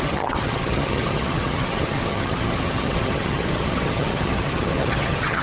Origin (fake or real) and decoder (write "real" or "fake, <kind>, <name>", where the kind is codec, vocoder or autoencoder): fake, vocoder, HiFi-GAN